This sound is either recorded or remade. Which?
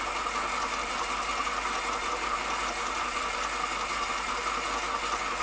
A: recorded